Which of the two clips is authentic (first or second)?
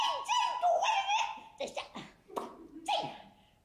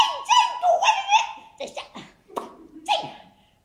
first